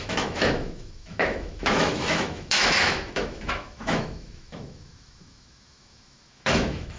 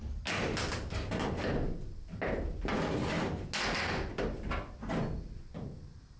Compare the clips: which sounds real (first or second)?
second